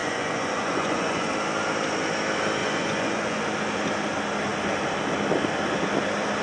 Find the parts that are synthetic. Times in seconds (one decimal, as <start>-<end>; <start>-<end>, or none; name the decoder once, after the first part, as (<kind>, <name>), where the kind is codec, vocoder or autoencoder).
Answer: 0.0-1.3 (vocoder, Vocos); 2.6-3.4